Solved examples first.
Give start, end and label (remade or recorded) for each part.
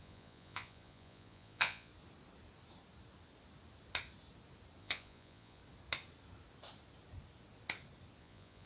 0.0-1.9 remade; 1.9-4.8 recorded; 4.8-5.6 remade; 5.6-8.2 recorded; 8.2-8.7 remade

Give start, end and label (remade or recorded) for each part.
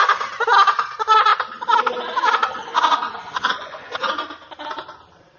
0.0-2.6 recorded; 2.6-4.1 remade; 4.1-5.4 recorded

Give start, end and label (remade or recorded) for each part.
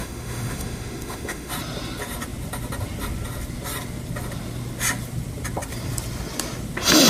0.0-1.5 remade; 1.5-7.1 recorded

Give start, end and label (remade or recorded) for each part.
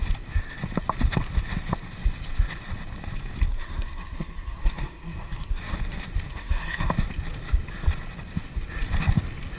0.0-3.5 recorded; 3.5-5.6 remade; 5.6-6.3 recorded; 6.3-6.9 remade; 6.9-9.6 recorded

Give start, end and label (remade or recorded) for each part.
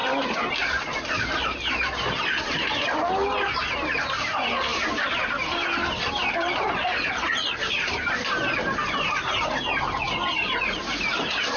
0.0-11.6 recorded